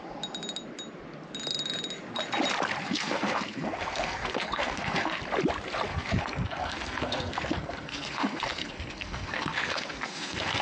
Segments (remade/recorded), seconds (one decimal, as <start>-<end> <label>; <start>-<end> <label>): 0.0-2.8 recorded; 2.8-5.2 remade; 5.2-5.9 recorded; 5.9-10.6 remade